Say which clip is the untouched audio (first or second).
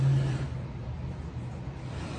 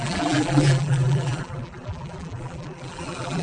first